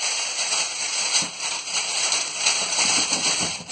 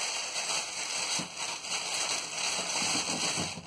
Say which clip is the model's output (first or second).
first